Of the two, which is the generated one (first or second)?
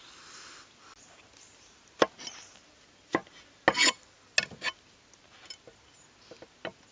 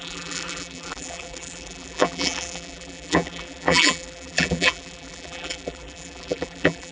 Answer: second